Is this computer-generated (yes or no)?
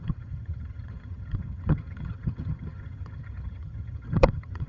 yes